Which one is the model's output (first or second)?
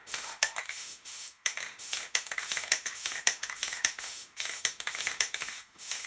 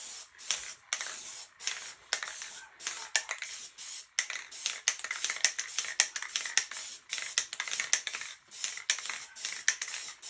first